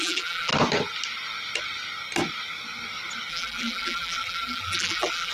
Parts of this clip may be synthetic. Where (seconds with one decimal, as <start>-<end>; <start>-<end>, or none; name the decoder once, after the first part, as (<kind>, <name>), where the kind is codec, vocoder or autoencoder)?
0.0-0.5 (vocoder, BigVGAN v2); 3.3-5.3